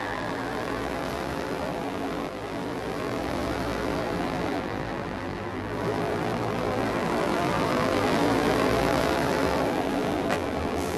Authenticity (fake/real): fake